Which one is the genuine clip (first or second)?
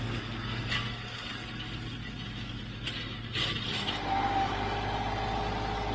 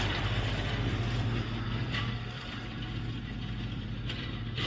first